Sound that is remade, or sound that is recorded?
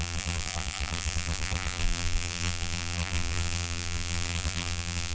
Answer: remade